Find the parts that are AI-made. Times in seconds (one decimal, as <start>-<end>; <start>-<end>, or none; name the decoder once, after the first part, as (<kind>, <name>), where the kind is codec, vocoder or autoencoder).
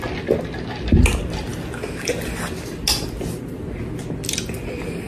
none